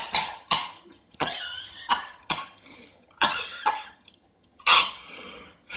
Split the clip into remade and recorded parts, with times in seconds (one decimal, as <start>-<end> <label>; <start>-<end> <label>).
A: 0.0-5.8 remade